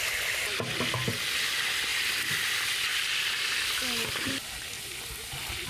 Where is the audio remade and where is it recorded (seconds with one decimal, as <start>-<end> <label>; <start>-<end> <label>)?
0.0-5.7 recorded